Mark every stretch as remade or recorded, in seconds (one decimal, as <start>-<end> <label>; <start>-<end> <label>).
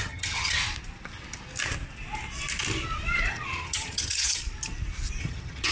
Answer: 0.0-0.6 remade; 0.6-3.3 recorded; 3.3-4.4 remade; 4.4-5.2 recorded; 5.2-5.7 remade